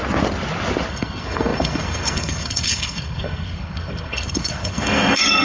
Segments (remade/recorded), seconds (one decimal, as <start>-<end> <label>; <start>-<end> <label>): 0.0-0.9 recorded; 0.9-5.4 remade